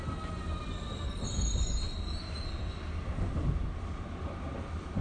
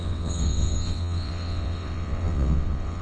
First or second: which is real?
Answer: first